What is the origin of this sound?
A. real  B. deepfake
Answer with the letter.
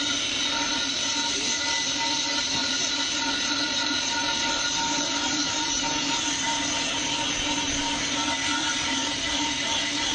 B